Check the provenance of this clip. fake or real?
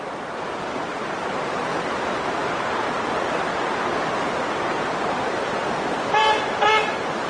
real